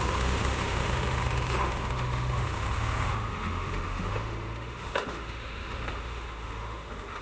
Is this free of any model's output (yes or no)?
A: no